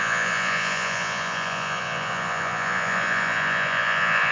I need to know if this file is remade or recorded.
remade